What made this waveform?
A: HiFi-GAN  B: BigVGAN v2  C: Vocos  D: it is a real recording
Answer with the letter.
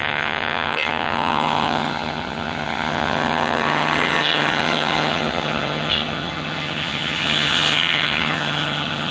A